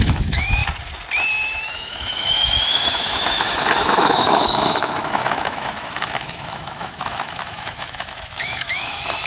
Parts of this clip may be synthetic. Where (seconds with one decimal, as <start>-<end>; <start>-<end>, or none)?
0.0-0.6; 1.6-9.3